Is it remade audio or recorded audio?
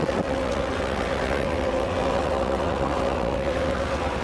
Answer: remade